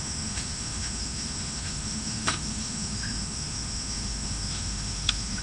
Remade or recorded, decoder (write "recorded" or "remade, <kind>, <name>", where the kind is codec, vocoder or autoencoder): remade, autoencoder, DAC-VAE